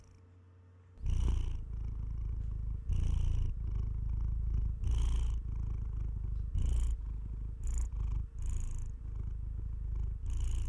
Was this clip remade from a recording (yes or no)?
no